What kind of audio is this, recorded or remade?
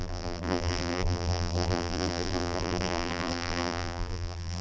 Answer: remade